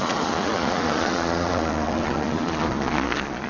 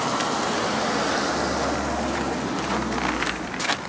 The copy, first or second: first